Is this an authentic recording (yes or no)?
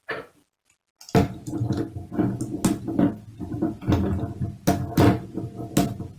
yes